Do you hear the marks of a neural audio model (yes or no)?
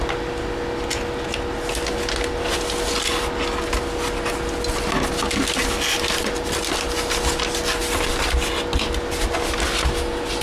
no